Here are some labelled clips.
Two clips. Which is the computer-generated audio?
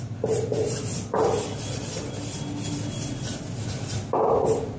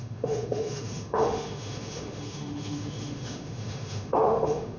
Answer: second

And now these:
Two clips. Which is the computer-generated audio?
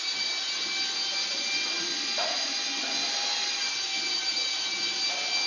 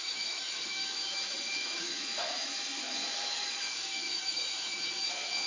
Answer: second